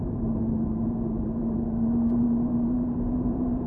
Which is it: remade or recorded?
remade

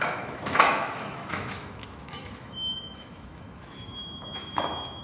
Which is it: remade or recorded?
remade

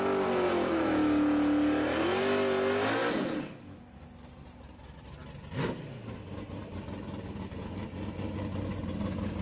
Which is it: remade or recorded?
recorded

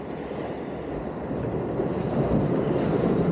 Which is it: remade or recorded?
recorded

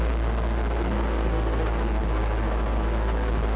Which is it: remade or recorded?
remade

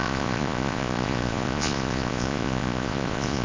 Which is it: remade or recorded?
remade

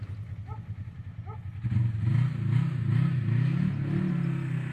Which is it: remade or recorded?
recorded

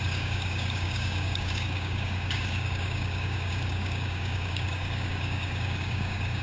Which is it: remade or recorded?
remade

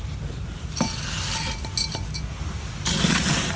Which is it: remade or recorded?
recorded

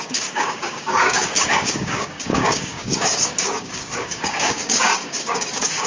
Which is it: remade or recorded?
remade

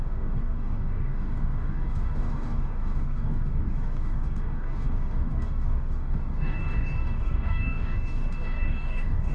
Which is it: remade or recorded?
remade